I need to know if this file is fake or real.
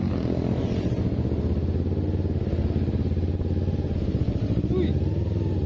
real